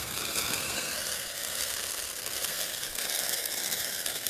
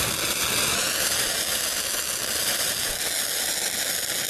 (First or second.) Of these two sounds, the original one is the second